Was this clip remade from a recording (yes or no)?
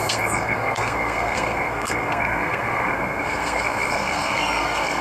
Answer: yes